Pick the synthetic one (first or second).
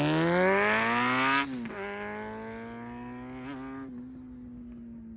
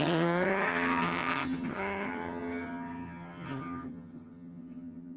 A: second